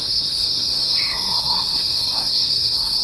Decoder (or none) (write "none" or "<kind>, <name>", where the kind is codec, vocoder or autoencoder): codec, SNAC